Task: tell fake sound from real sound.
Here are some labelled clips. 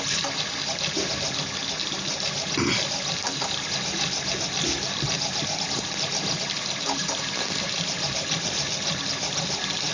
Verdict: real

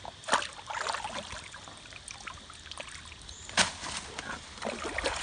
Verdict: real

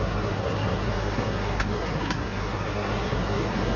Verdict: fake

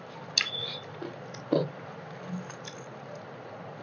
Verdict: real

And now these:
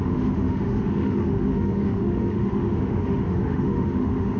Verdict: fake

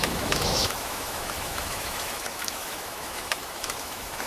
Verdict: fake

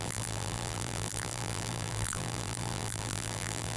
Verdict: fake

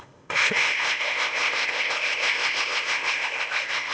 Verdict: fake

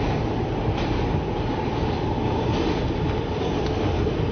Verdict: real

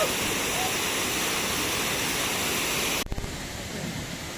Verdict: real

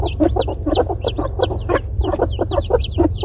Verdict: real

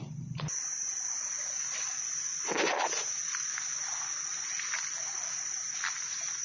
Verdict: real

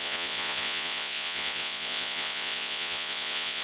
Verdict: fake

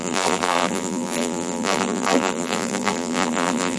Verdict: fake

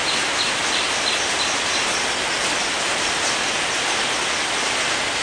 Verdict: real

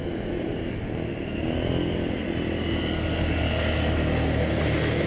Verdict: real